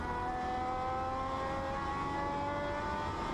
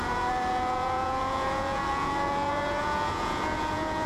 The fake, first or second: second